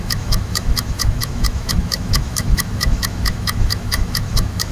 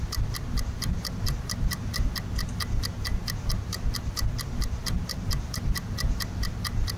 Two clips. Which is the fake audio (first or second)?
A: first